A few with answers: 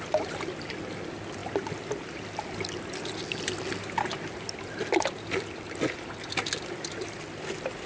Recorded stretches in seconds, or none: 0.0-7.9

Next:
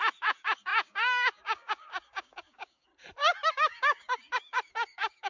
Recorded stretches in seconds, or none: 2.9-3.5

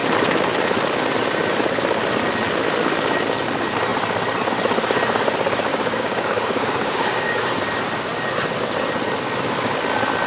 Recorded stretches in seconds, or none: 0.0-5.7; 7.6-10.3

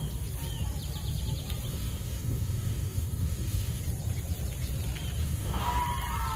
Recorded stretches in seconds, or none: 0.0-1.7; 3.8-5.2; 5.8-6.4